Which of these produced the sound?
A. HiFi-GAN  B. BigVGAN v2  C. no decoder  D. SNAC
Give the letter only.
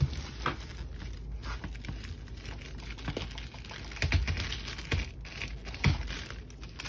C